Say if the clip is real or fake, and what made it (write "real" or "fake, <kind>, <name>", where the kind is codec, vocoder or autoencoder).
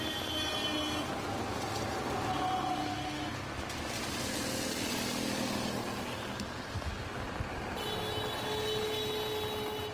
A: real